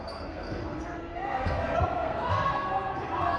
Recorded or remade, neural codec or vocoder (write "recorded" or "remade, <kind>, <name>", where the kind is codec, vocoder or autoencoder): remade, codec, SNAC